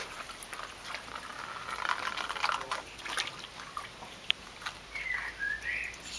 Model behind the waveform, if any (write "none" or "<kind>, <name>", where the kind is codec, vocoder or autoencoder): none